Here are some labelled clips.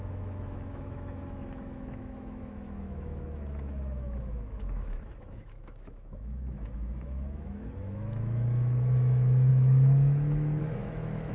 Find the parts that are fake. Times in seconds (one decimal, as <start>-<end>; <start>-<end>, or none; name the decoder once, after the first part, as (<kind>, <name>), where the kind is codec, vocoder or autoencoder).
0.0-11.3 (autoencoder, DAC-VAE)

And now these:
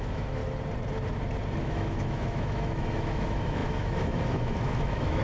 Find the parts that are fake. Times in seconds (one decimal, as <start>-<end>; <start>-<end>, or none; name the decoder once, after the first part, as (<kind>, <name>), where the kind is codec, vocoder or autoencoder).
0.0-0.4 (autoencoder, DAC-VAE); 1.6-5.2

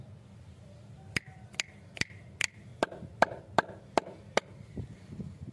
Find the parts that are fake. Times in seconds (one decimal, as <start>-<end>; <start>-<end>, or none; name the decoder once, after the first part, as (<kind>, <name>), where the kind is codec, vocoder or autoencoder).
none

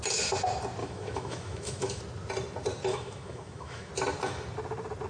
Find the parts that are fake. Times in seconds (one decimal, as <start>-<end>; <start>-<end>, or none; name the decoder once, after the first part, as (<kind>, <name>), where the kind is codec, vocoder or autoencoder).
0.8-2.0 (autoencoder, DAC-VAE); 2.9-3.9